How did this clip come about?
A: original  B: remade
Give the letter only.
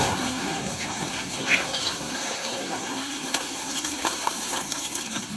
B